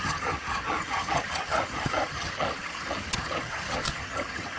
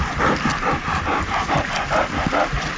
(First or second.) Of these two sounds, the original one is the second